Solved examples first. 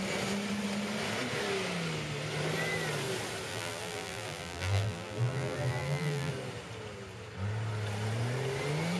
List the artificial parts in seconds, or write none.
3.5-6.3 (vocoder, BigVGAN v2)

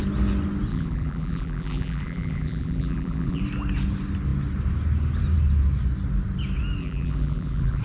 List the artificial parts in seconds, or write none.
0.7-3.4 (vocoder, BigVGAN v2); 6.8-7.8

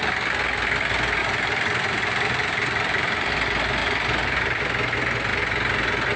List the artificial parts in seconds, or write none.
1.2-3.3 (vocoder, BigVGAN v2); 3.8-4.6

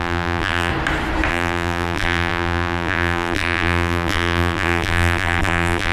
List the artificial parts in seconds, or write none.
0.0-0.7 (vocoder, BigVGAN v2); 1.3-5.9

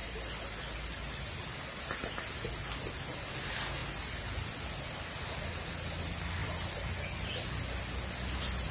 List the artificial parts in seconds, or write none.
0.0-2.1 (vocoder, BigVGAN v2); 6.4-7.3